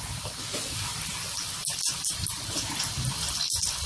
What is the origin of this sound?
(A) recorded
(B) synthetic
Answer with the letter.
A